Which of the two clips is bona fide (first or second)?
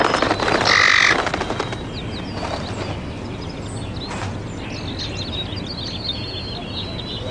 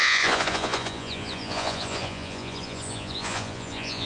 first